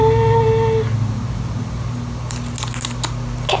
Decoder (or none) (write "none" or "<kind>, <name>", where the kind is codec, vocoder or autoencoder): none